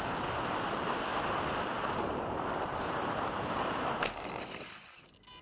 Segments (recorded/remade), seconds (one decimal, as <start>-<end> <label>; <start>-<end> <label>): 0.0-1.1 recorded; 1.1-4.3 remade; 4.3-5.4 recorded